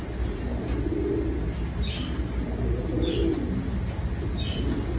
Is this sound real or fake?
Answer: real